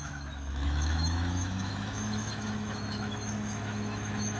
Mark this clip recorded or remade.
remade